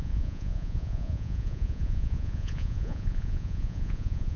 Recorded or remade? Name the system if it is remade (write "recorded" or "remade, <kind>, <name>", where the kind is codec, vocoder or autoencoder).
remade, vocoder, Vocos